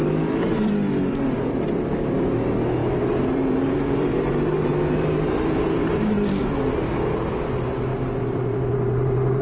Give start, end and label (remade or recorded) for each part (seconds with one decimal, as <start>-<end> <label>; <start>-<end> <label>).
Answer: 0.0-0.7 remade; 0.7-2.8 recorded; 2.8-6.5 remade; 6.5-7.9 recorded; 7.9-9.4 remade